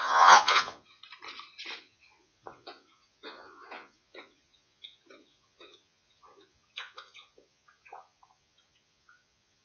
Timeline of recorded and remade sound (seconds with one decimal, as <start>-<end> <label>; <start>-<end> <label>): 0.0-1.0 remade; 1.0-1.8 recorded; 1.8-9.6 remade